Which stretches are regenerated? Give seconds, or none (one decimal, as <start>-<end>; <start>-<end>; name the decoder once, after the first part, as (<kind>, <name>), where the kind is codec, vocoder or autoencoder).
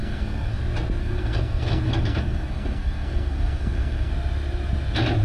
0.0-0.6 (codec, SNAC); 1.0-4.1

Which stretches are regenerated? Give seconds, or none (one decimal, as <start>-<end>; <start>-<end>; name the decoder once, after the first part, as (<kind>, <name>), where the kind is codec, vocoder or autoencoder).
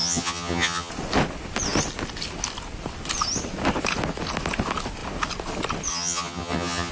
0.0-0.9 (vocoder, HiFi-GAN); 5.9-6.9